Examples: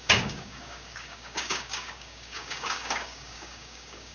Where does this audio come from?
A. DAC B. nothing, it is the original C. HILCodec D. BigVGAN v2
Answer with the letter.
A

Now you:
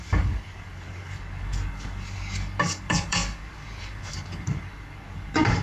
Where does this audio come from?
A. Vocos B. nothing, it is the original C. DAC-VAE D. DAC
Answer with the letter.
D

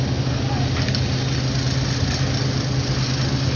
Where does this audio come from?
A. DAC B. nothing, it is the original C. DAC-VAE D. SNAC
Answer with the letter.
B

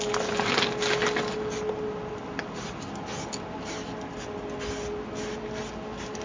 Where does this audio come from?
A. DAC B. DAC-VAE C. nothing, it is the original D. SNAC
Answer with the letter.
C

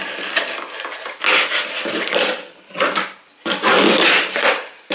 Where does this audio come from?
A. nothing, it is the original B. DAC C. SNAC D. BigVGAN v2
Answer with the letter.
A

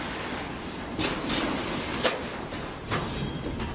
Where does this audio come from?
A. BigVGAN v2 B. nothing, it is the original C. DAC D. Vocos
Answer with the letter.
B